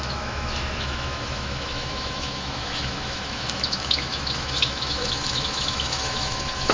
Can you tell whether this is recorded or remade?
remade